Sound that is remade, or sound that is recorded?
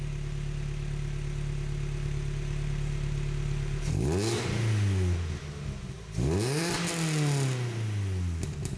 recorded